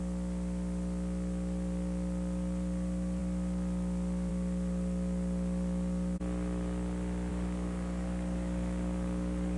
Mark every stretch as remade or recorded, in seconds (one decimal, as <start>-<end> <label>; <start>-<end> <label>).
0.0-7.3 recorded; 7.3-9.6 remade